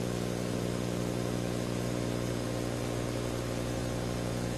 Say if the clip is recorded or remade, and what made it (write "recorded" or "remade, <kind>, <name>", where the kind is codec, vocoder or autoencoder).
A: remade, vocoder, Vocos